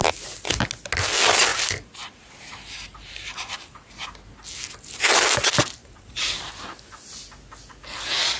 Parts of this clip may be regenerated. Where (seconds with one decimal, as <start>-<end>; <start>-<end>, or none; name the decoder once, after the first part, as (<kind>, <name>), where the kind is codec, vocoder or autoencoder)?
1.5-3.9 (vocoder, BigVGAN v2); 5.8-6.9